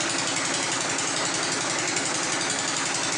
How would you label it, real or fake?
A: real